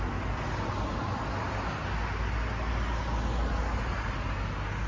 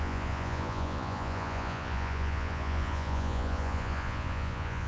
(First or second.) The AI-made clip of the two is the second